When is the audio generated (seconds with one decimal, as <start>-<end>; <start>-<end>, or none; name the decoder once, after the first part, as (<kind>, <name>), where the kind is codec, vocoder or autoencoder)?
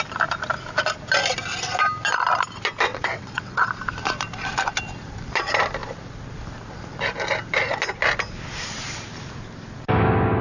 2.9-3.7 (vocoder, WaveNeXt)